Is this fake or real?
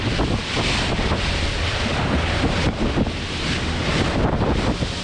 real